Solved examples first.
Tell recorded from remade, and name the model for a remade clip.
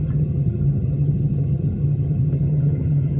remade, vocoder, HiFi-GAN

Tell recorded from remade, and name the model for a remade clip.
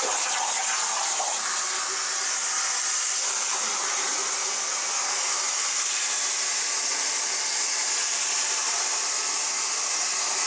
recorded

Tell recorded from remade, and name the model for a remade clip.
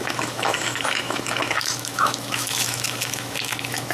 remade, autoencoder, DAC-VAE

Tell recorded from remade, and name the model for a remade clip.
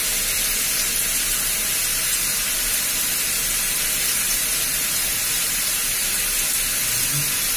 recorded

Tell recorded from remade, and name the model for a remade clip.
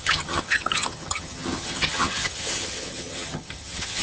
remade, vocoder, HiFi-GAN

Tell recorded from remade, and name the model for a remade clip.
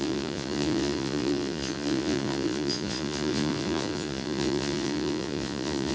remade, vocoder, Vocos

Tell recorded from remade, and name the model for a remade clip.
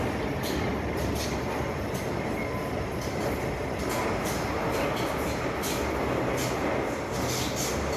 recorded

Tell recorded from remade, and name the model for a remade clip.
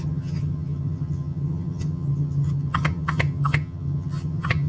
remade, vocoder, HiFi-GAN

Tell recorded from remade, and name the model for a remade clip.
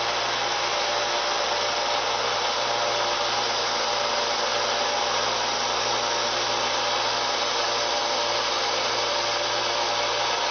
recorded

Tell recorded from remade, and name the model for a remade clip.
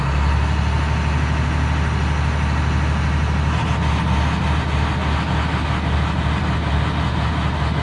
recorded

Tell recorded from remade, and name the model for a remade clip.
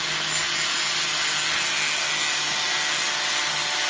recorded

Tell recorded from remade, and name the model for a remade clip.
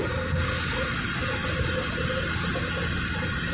recorded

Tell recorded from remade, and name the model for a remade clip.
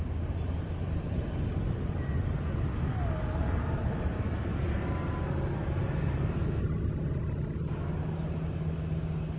recorded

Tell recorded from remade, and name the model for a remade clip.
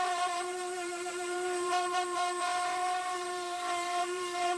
remade, vocoder, BigVGAN v2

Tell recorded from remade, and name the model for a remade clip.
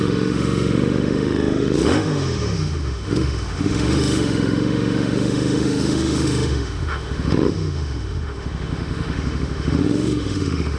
remade, autoencoder, DAC-VAE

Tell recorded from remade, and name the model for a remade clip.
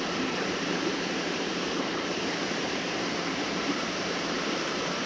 remade, vocoder, BigVGAN v2